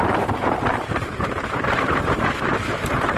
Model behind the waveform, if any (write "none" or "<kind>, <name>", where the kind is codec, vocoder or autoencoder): vocoder, BigVGAN v2